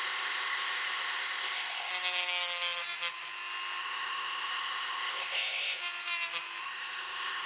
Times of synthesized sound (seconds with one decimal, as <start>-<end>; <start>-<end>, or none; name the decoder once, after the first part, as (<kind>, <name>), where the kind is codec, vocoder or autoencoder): 0.0-1.9 (codec, ZipCodec); 3.8-5.8; 6.6-7.5